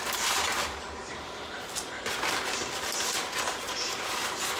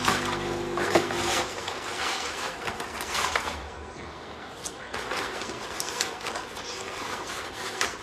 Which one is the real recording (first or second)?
first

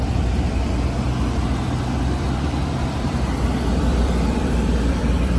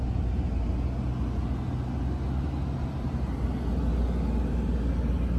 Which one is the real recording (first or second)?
second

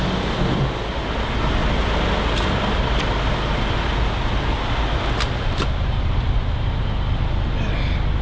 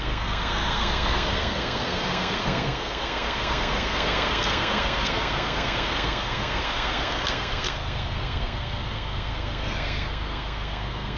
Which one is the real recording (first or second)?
first